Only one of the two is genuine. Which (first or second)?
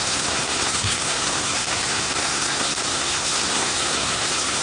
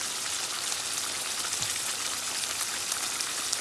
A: second